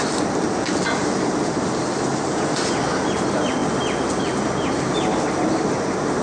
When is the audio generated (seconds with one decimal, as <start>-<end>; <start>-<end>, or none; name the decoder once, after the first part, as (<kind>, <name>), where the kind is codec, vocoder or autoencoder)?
none